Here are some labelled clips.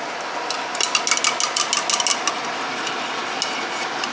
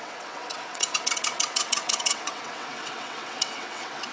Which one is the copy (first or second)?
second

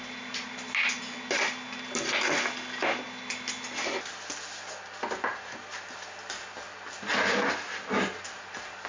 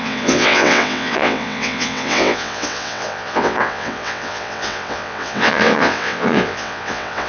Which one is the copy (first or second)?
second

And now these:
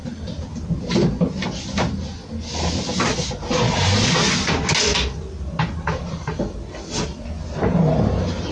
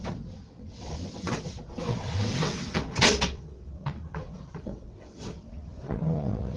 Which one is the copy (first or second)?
second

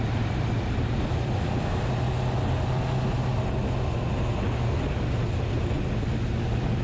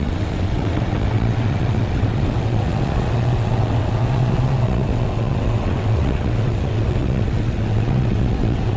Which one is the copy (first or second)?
second